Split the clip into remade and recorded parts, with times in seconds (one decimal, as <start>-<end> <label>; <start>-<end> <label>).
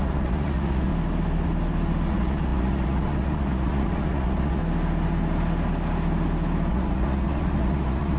0.0-0.9 remade; 0.9-2.1 recorded; 2.1-4.6 remade; 4.6-6.7 recorded; 6.7-8.2 remade